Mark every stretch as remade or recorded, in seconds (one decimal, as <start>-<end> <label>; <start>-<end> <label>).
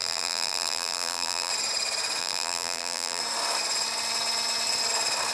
0.0-1.5 remade; 1.5-2.2 recorded; 2.2-3.2 remade; 3.2-5.3 recorded